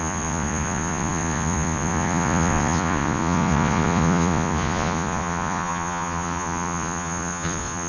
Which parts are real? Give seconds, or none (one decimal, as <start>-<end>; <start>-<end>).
none